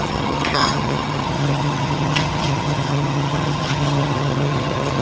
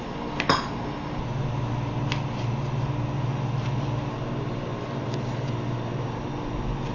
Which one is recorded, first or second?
second